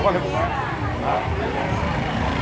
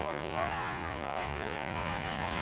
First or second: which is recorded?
first